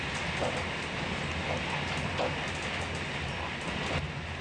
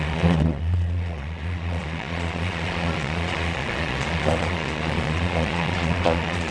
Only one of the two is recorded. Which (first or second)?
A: first